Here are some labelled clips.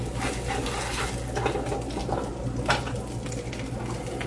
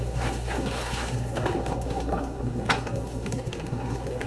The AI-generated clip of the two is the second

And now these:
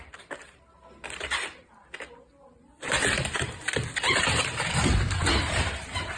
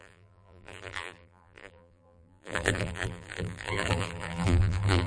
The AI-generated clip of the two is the second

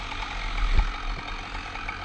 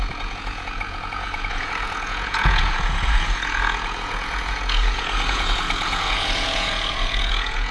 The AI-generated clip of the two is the second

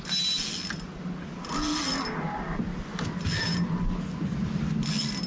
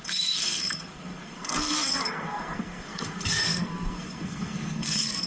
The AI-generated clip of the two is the second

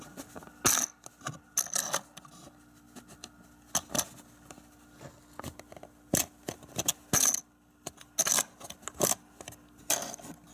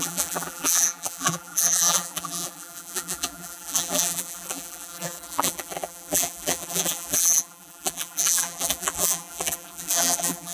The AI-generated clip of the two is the second